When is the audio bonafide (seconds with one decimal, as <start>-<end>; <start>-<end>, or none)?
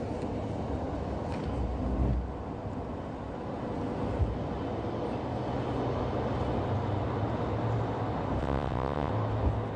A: 0.0-8.4; 9.1-9.8